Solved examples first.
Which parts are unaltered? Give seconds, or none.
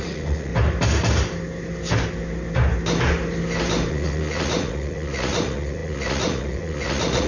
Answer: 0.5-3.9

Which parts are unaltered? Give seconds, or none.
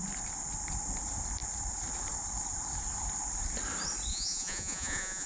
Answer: 0.0-4.1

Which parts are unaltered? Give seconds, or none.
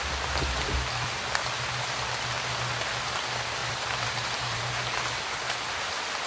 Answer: 0.0-3.6; 4.6-6.3